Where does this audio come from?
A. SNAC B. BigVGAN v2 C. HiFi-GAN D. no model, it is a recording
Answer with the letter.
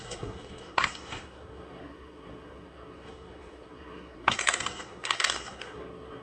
A